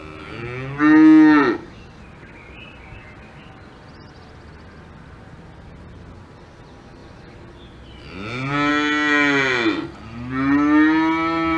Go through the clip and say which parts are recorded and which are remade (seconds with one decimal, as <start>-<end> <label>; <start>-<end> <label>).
0.0-11.6 recorded